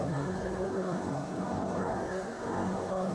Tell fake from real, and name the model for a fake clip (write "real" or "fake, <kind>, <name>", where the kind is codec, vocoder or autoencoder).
fake, codec, SNAC